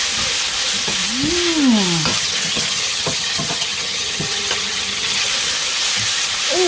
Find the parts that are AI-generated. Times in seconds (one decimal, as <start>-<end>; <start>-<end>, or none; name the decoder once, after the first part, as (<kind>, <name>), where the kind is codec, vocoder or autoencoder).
2.1-5.3 (vocoder, HiFi-GAN)